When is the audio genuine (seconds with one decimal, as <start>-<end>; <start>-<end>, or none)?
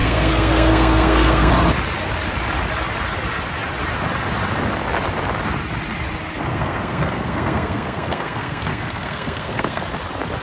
1.5-6.5; 9.8-10.4